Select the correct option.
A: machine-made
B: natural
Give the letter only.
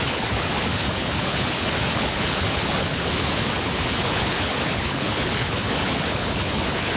A